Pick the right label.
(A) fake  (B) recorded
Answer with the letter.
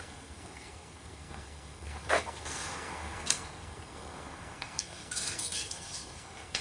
A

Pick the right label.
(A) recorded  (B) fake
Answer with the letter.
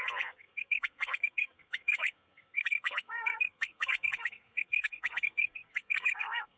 B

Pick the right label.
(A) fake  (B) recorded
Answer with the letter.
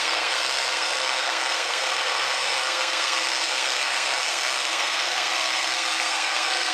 A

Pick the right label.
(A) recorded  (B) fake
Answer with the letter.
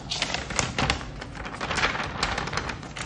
A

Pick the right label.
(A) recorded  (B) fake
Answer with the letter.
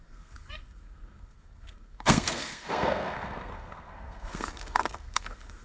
B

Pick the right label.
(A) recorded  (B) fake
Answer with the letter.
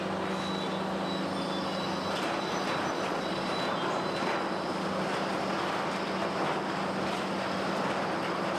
A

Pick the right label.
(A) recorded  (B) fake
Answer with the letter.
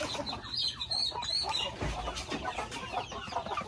A